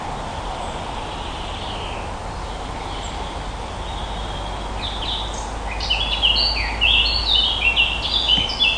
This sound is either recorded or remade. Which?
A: recorded